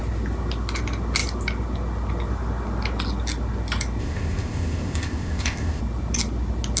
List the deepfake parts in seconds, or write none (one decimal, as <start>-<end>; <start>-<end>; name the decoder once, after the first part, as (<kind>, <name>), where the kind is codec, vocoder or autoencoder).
4.0-5.8 (codec, ZipCodec)